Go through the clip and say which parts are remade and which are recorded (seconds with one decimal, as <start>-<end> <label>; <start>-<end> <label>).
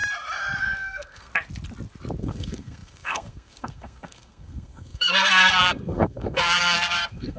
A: 0.0-0.6 recorded; 0.6-1.3 remade; 1.3-2.2 recorded; 2.2-7.4 remade